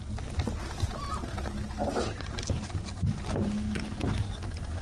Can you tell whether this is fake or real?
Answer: real